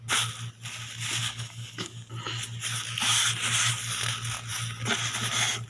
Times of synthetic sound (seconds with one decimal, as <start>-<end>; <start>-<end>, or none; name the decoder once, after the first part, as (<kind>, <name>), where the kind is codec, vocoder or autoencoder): 1.2-2.1 (codec, DAC)